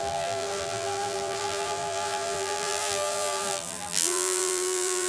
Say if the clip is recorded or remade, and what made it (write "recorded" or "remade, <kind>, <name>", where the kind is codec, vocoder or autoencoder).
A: remade, vocoder, BigVGAN v2